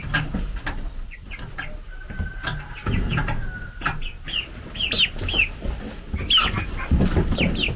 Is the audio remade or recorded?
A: recorded